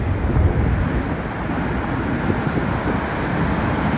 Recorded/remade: recorded